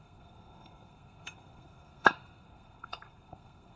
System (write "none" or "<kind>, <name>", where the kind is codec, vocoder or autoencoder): codec, SNAC